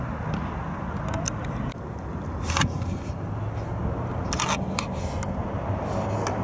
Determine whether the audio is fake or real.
real